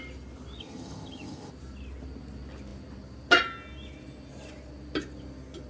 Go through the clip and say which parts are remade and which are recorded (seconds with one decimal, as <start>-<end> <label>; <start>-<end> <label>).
0.0-0.6 recorded; 0.6-1.5 remade; 1.5-5.7 recorded